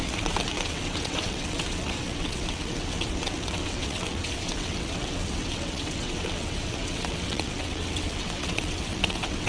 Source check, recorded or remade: remade